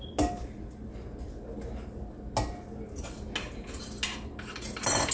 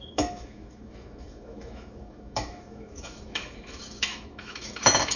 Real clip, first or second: first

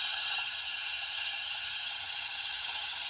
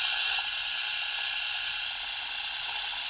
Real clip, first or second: second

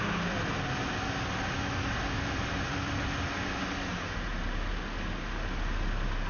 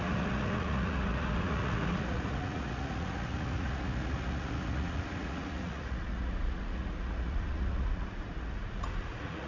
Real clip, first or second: first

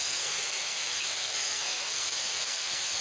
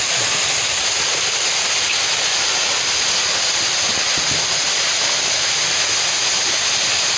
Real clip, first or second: second